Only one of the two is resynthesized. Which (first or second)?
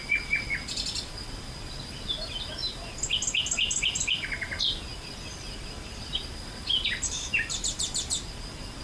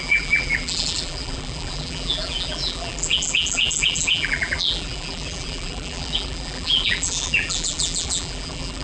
second